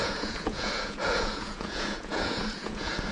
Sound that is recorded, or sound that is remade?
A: remade